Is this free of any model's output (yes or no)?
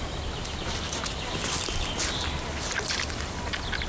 yes